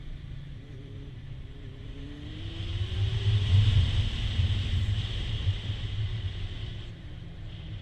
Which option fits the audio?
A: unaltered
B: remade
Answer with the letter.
B